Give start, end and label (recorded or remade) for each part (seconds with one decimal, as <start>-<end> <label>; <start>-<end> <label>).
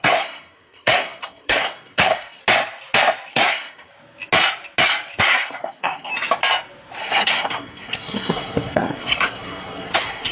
0.0-2.4 remade; 2.4-3.3 recorded; 3.3-3.9 remade; 3.9-5.2 recorded; 5.2-6.1 remade; 6.1-7.0 recorded; 7.0-10.3 remade